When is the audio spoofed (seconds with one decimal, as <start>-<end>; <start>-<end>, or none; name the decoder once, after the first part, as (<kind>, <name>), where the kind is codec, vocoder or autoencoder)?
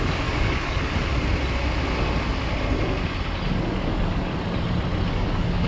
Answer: 0.0-1.1 (codec, DAC); 3.6-4.3; 5.1-5.7